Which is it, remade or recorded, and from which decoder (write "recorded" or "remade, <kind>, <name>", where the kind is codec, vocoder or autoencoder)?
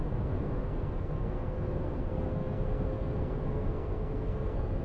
remade, codec, SNAC